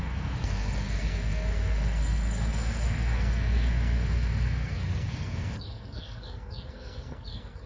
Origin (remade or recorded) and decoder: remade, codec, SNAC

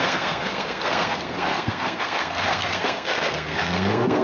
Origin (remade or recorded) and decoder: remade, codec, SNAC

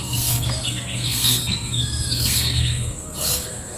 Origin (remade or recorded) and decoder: remade, codec, SNAC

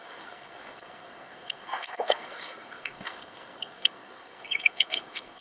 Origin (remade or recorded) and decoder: remade, codec, SNAC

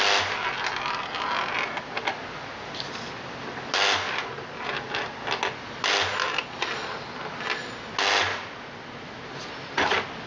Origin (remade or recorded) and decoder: recorded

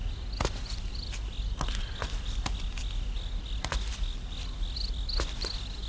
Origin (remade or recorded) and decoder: recorded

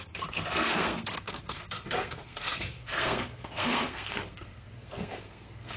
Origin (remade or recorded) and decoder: remade, codec, SNAC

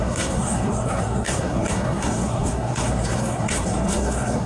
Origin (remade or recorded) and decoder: remade, codec, SNAC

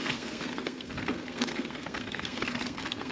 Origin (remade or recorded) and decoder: remade, codec, SNAC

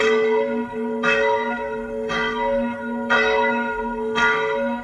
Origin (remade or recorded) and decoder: remade, codec, SNAC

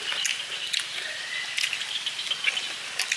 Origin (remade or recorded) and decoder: recorded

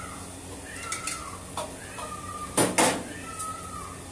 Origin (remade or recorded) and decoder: recorded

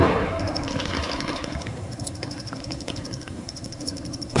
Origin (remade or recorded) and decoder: remade, codec, SNAC